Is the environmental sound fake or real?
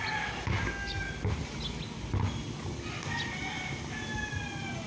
real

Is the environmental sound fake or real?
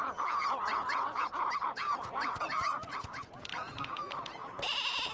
fake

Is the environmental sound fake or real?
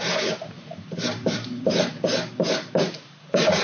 fake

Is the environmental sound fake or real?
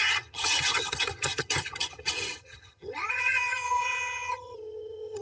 fake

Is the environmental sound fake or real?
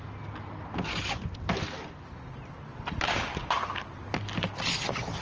real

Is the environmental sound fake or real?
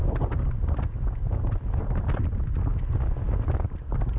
real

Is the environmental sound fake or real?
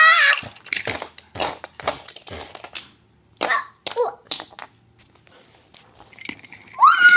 real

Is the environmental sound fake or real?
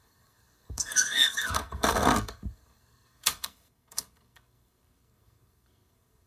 fake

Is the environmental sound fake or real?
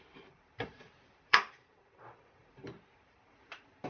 fake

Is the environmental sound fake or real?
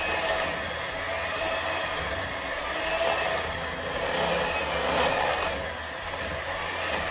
real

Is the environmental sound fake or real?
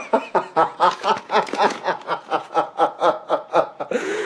fake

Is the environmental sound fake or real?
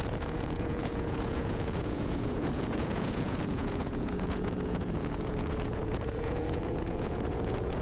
fake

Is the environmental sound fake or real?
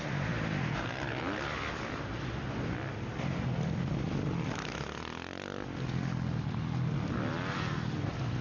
real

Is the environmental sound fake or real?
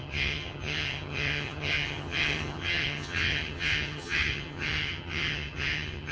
fake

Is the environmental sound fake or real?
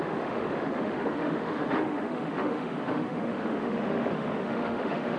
fake